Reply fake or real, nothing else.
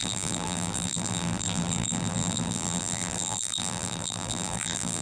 fake